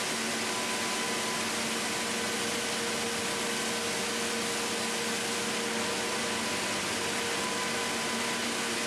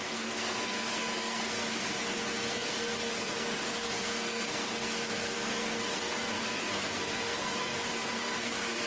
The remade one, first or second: second